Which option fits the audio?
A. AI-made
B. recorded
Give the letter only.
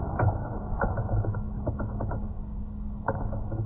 A